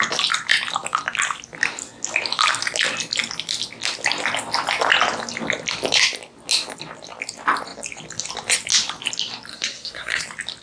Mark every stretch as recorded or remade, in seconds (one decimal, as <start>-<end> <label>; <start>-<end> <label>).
0.0-9.5 recorded; 9.5-10.2 remade; 10.2-10.6 recorded